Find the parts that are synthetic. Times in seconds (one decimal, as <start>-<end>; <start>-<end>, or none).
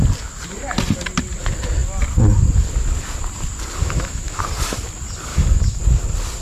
3.8-4.4; 5.3-5.8